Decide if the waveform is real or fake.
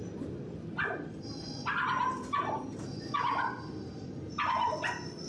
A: real